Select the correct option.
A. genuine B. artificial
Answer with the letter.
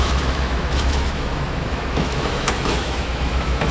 B